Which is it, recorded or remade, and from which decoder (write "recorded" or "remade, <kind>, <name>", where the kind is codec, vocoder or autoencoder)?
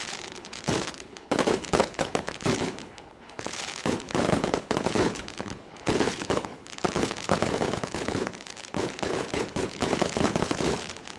remade, codec, HILCodec